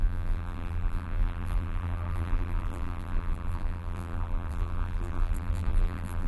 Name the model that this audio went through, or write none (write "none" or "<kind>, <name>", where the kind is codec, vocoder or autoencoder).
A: vocoder, BigVGAN v2